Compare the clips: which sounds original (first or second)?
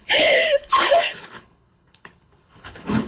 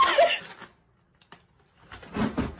second